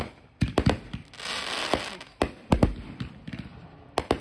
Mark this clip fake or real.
real